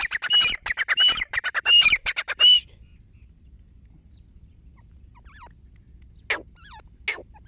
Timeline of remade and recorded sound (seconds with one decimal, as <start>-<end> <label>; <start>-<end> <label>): 0.0-1.6 recorded; 1.6-2.9 remade; 2.9-7.5 recorded